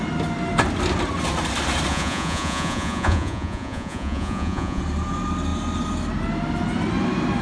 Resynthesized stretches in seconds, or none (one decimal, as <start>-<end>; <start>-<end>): 1.9-4.8